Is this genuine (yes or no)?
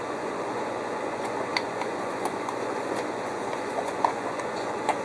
no